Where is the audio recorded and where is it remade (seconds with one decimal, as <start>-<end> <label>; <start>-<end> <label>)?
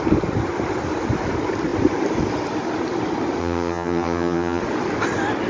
0.0-3.4 recorded; 3.4-4.6 remade; 4.6-5.5 recorded